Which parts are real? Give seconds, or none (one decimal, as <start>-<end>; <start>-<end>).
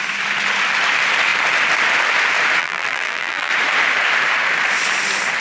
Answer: 0.0-2.6; 3.5-5.4